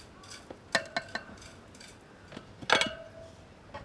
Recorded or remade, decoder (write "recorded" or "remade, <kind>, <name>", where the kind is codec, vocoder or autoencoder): recorded